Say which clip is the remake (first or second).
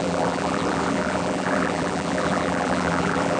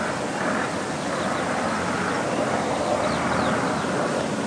first